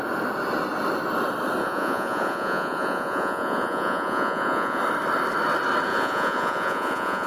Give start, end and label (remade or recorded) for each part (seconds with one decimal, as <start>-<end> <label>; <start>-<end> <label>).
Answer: 0.0-1.6 recorded; 1.6-4.8 remade; 4.8-5.9 recorded; 5.9-7.3 remade